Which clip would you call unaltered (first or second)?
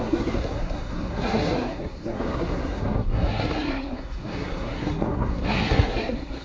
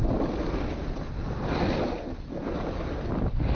second